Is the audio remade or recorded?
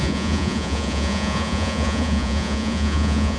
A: remade